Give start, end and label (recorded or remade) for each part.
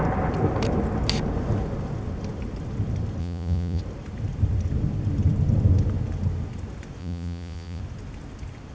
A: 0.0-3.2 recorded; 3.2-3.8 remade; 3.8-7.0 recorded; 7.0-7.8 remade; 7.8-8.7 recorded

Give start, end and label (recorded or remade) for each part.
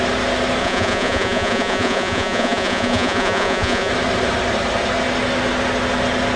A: 0.0-0.6 recorded; 0.6-3.9 remade; 3.9-6.4 recorded